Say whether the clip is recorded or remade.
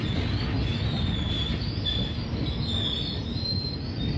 recorded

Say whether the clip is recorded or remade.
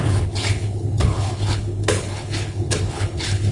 remade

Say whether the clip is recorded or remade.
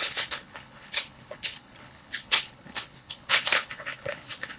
remade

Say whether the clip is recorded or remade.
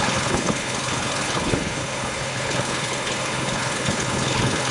remade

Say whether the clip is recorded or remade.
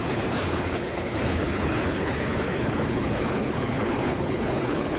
remade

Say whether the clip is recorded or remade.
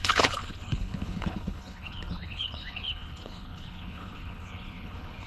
remade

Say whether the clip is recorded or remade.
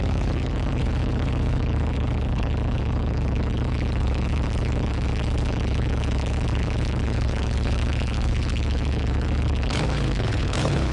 remade